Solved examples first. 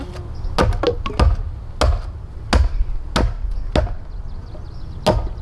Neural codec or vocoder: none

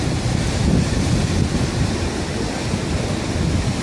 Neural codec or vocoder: none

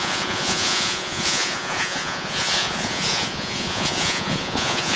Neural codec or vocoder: vocoder, Vocos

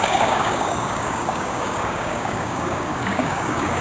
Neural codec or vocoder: codec, DAC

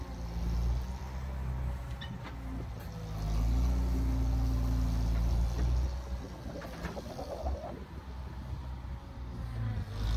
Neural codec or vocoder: none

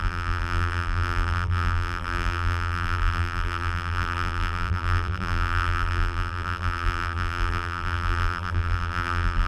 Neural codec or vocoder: vocoder, BigVGAN v2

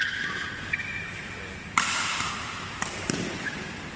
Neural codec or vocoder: none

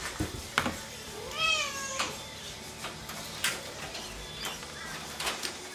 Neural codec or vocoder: vocoder, BigVGAN v2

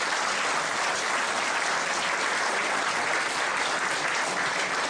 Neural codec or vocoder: none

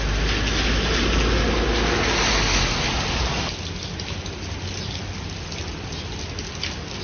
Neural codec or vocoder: none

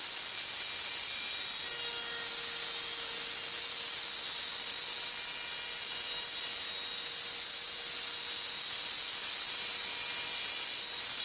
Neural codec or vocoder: none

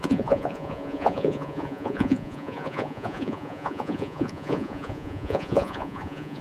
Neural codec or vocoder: vocoder, Vocos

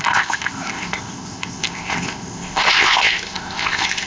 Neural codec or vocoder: codec, ZipCodec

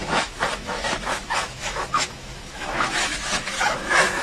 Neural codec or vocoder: autoencoder, DAC-VAE